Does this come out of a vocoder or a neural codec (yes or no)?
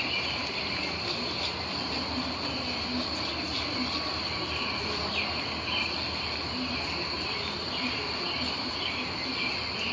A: no